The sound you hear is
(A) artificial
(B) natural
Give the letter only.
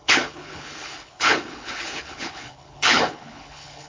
A